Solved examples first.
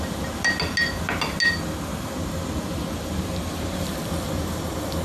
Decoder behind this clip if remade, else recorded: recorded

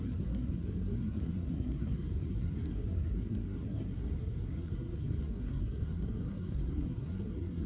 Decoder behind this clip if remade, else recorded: remade, codec, SNAC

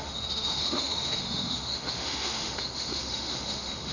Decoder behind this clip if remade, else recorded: remade, autoencoder, DAC-VAE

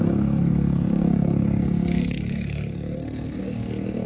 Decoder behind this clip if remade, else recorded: remade, codec, SNAC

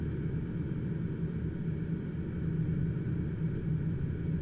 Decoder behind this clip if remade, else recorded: recorded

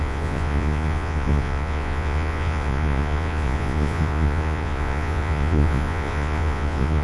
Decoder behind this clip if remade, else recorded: remade, vocoder, Vocos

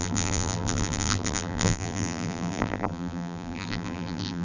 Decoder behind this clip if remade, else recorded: remade, vocoder, BigVGAN v2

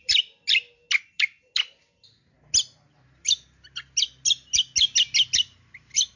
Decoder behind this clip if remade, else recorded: recorded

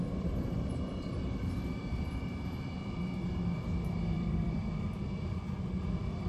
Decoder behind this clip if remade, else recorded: remade, vocoder, BigVGAN v2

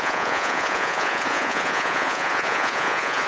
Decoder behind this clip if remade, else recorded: remade, vocoder, Vocos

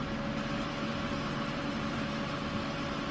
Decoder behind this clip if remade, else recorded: recorded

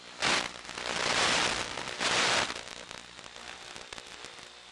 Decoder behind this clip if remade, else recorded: recorded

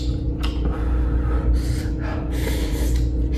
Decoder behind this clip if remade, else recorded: recorded